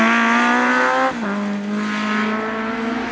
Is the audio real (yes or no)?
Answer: yes